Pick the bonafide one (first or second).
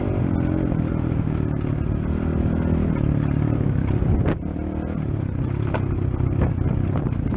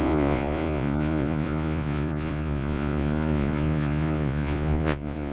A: first